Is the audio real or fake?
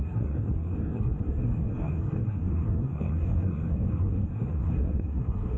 fake